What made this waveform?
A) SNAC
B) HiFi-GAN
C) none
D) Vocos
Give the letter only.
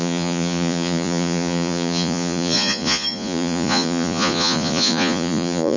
D